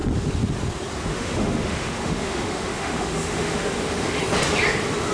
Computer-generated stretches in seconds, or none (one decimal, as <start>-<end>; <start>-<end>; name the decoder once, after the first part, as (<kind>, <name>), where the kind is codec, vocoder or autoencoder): 1.1-4.2 (autoencoder, DAC-VAE)